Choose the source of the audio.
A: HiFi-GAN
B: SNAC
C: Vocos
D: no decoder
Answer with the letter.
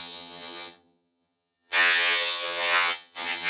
A